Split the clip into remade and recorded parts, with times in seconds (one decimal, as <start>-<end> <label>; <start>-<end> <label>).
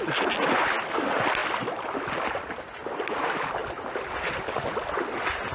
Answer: 0.0-5.5 recorded